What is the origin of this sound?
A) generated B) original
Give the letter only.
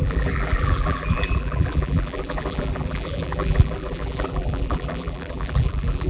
A